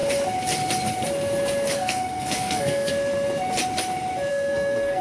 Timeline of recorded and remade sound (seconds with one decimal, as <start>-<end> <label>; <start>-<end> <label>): 0.0-1.7 recorded; 1.7-2.9 remade; 2.9-4.3 recorded; 4.3-5.0 remade